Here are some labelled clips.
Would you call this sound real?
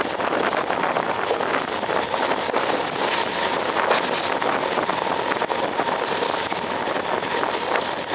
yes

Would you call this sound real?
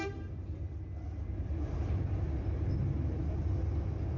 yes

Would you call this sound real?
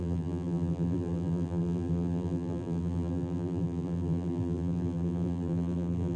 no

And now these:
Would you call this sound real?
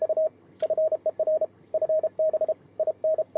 no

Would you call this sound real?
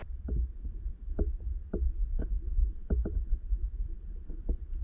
no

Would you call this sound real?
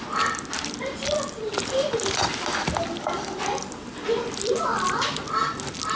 no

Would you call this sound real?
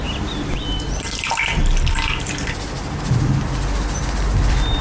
yes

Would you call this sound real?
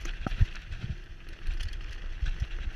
yes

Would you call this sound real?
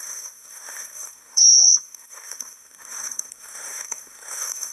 no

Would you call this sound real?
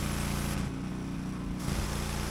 yes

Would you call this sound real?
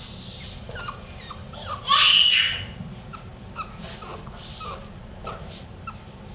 yes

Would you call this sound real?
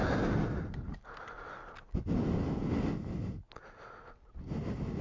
yes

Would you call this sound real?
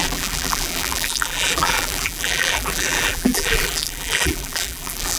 no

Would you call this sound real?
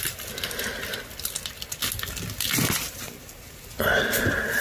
yes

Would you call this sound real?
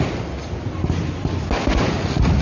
yes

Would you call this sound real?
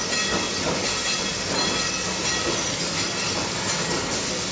yes